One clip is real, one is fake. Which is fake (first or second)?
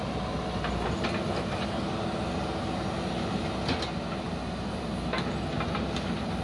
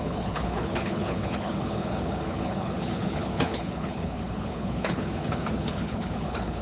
second